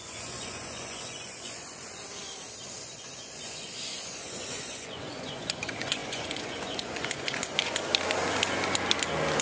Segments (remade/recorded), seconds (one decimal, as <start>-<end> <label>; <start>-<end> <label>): 0.0-2.0 remade; 2.0-2.8 recorded; 2.8-7.9 remade; 7.9-9.4 recorded